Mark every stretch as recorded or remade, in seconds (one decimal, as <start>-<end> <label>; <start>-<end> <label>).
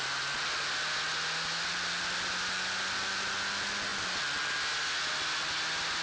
0.0-6.0 recorded